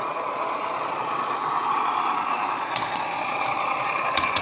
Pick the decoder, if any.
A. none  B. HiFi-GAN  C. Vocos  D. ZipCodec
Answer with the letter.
C